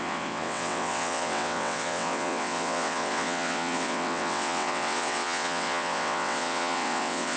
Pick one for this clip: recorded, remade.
remade